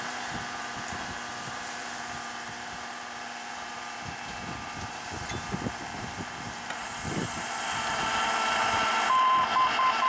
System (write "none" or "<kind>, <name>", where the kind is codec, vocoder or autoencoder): vocoder, BigVGAN v2